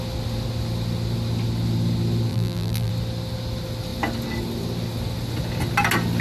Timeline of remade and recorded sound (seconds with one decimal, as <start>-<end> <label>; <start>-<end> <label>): 0.0-2.3 recorded; 2.3-2.9 remade; 2.9-6.2 recorded